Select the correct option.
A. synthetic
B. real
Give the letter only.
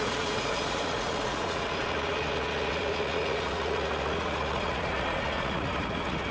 A